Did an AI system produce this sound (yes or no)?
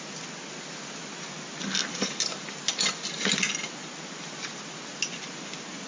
no